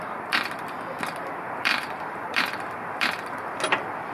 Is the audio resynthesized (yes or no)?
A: no